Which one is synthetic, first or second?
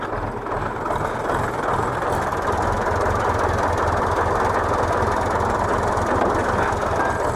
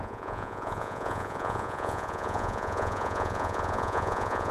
second